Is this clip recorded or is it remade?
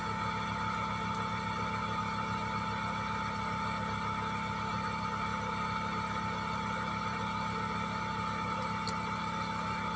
recorded